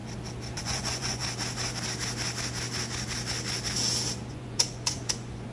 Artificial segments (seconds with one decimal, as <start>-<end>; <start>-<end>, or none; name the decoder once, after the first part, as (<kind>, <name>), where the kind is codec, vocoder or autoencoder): 0.6-1.2 (vocoder, Vocos); 4.3-5.5